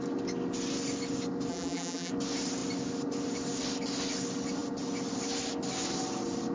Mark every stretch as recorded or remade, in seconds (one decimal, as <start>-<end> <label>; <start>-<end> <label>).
0.0-1.5 recorded; 1.5-2.1 remade; 2.1-6.5 recorded